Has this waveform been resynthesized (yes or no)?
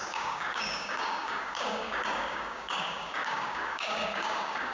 yes